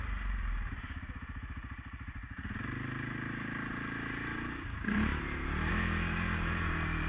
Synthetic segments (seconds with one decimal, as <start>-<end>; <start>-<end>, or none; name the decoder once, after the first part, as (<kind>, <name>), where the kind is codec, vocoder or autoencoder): 0.0-7.1 (vocoder, BigVGAN v2)